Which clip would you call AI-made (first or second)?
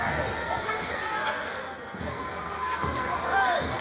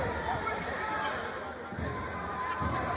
first